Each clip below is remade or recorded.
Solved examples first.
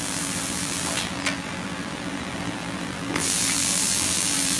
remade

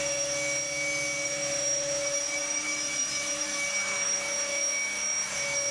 remade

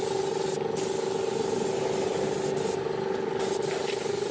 recorded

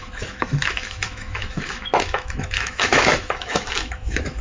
remade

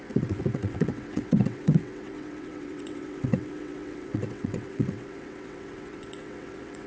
remade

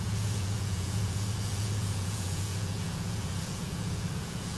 remade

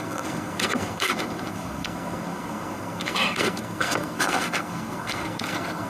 remade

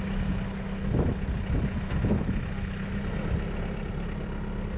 recorded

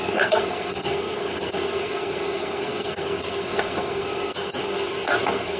remade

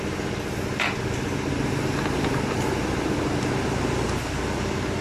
recorded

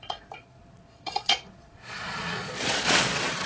remade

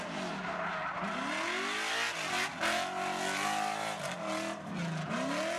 recorded